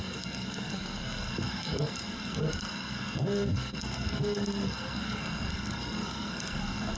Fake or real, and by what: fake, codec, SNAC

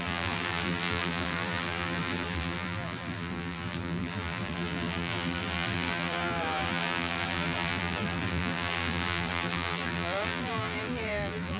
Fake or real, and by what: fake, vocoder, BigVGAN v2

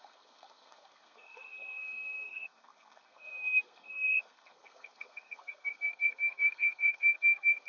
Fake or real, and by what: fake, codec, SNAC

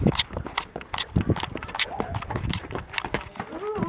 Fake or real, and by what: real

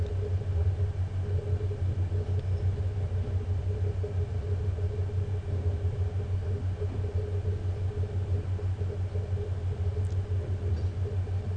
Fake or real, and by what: real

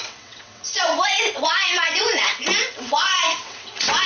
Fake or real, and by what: fake, vocoder, WaveNeXt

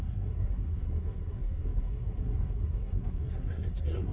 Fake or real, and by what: fake, codec, SNAC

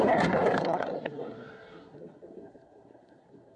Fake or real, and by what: fake, codec, SNAC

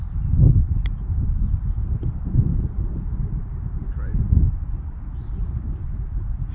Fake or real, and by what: real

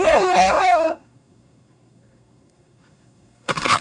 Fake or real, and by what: fake, codec, SNAC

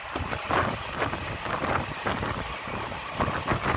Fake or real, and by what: real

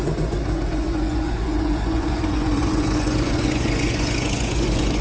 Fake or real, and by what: fake, vocoder, Vocos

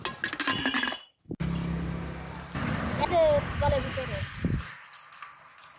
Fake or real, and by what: real